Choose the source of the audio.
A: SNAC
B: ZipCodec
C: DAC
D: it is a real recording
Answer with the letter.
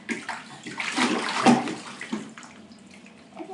D